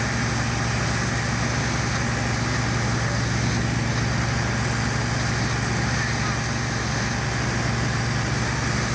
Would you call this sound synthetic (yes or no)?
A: no